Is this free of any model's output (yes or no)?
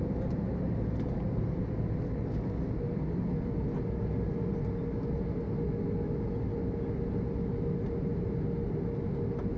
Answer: yes